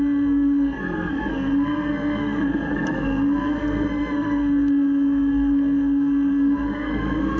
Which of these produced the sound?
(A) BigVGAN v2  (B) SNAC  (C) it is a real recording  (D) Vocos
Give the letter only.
B